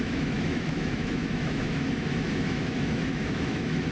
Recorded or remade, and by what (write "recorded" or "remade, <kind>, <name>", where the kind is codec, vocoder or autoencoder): remade, autoencoder, DAC-VAE